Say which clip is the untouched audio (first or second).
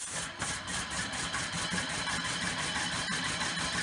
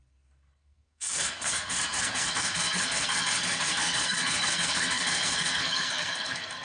first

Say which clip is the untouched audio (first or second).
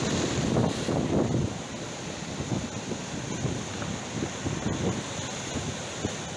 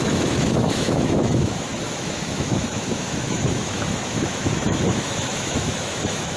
first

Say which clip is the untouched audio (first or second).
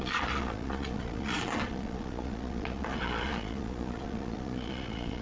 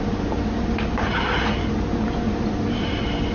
second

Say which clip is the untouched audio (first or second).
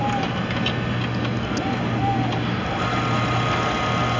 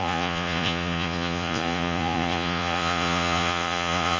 first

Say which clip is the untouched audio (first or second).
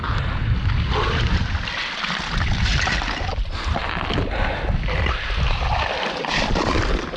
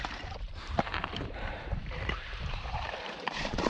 first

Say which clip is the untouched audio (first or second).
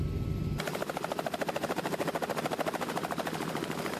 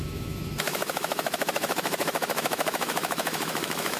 first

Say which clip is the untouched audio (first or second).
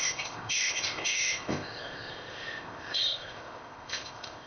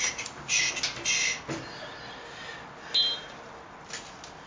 second